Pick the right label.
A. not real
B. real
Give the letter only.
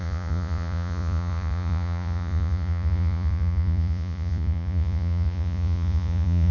A